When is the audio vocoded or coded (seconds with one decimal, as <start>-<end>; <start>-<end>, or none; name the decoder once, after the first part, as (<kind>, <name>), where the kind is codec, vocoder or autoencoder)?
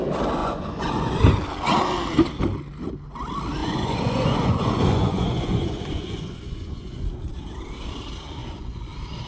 0.4-1.2 (vocoder, Vocos); 3.6-7.2; 8.4-8.9